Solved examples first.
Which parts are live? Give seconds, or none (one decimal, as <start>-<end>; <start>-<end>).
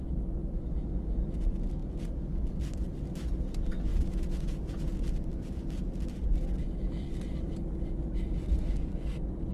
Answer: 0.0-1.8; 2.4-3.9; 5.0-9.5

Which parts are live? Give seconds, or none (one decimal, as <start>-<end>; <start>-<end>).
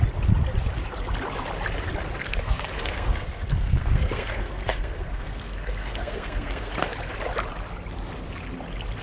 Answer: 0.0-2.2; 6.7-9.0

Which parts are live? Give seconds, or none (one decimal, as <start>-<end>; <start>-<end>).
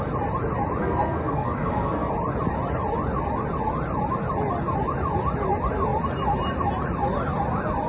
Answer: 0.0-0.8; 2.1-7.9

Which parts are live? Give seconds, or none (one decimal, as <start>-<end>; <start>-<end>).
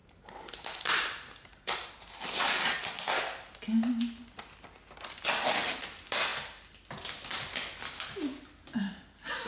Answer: 1.9-9.5